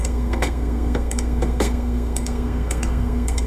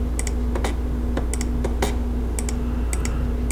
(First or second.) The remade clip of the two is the first